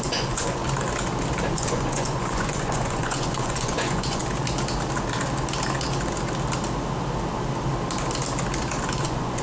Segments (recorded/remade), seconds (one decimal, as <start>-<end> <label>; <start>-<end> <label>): 0.0-0.6 remade; 0.6-1.5 recorded; 1.5-4.2 remade; 4.2-9.0 recorded; 9.0-9.4 remade